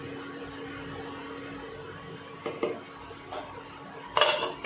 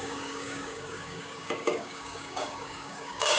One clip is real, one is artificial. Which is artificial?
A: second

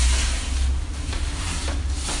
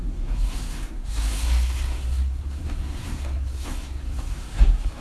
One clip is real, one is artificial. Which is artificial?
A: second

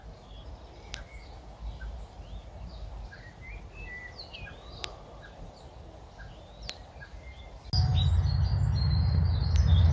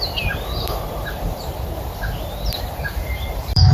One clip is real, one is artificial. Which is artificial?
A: second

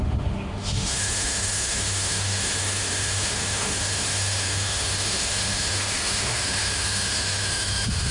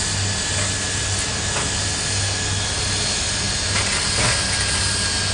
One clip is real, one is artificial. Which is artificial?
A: first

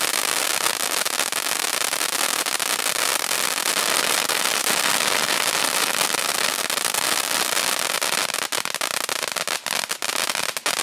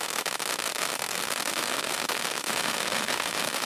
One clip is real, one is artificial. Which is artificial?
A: second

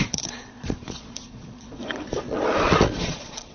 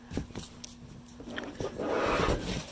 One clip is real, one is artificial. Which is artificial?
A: first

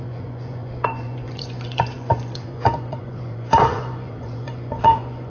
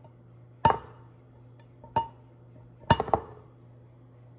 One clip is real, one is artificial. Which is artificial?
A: first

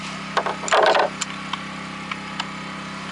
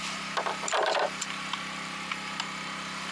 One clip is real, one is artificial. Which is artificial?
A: second